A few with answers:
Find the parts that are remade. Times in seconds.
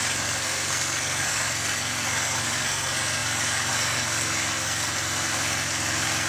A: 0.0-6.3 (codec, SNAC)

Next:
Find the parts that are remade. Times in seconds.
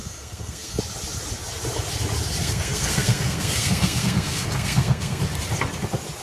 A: 0.0-0.8 (codec, SNAC); 2.4-5.2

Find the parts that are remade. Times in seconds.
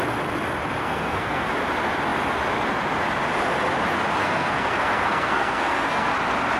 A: 0.8-1.5 (codec, SNAC); 4.2-6.1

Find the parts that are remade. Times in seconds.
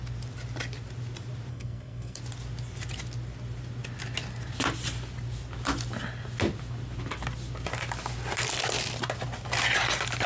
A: 1.5-2.2 (codec, SNAC)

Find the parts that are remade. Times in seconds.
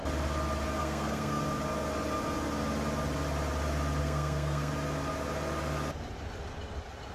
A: 0.8-1.4 (codec, SNAC); 4.0-4.7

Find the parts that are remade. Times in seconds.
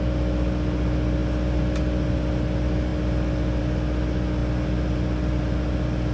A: none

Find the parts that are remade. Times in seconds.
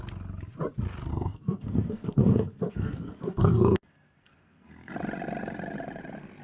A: 1.1-4.9 (codec, SNAC)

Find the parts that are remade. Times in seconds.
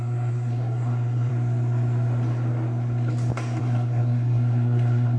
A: 0.0-1.3 (codec, SNAC); 3.6-5.2